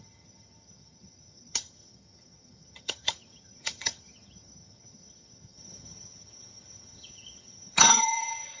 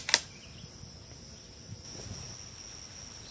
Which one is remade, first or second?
first